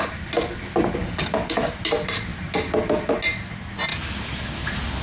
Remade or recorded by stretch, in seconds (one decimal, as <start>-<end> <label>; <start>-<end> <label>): 0.0-1.0 recorded; 1.0-1.6 remade; 1.6-5.0 recorded